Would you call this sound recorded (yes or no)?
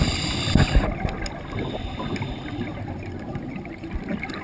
yes